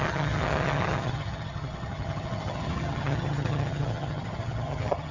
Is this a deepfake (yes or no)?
yes